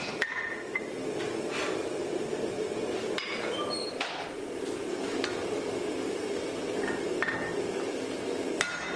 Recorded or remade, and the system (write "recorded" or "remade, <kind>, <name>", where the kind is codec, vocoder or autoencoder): recorded